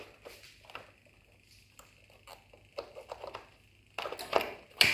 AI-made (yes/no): no